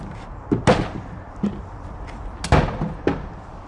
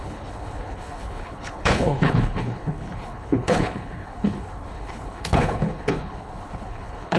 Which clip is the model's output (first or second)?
second